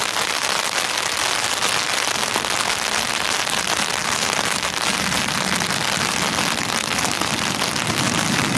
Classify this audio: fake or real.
real